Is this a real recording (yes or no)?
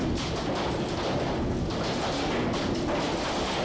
yes